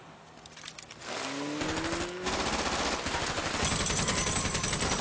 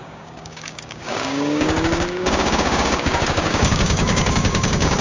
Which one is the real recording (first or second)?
first